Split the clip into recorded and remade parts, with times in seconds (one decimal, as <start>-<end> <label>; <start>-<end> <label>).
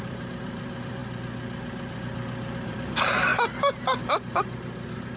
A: 0.0-1.0 remade; 1.0-2.7 recorded; 2.7-3.3 remade; 3.3-4.0 recorded; 4.0-5.2 remade